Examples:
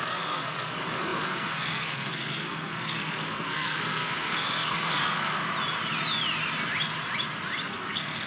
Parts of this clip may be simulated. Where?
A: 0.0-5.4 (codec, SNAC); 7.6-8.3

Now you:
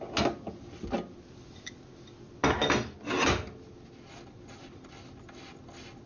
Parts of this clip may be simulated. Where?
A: none

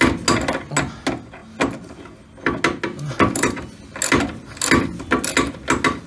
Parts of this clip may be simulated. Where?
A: none

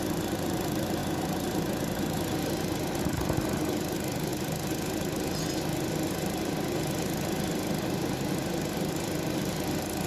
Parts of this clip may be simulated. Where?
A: none

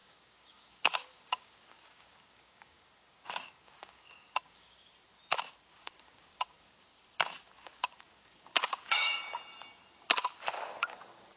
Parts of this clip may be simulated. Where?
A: 0.0-5.0 (codec, DAC); 5.6-6.9; 7.4-9.2; 10.7-11.4